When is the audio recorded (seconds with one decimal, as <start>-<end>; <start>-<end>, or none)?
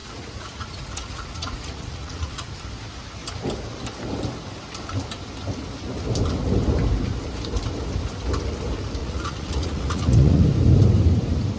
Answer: 2.5-9.0; 10.4-11.6